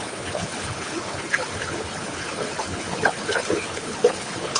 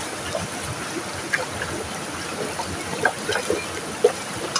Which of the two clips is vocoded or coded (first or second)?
first